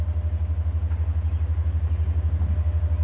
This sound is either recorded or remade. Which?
recorded